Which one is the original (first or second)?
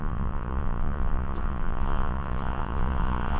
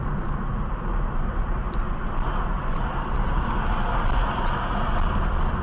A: second